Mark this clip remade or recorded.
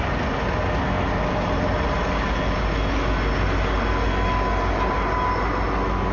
recorded